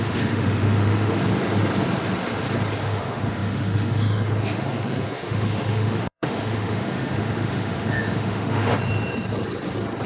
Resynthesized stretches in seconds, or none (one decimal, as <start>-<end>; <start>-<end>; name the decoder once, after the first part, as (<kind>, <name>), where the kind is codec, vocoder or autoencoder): 0.0-1.2 (autoencoder, DAC-VAE); 2.8-8.7